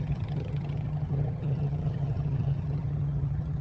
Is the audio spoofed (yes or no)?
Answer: yes